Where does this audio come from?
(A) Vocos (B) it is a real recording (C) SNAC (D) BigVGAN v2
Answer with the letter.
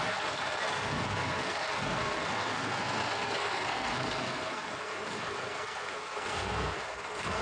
C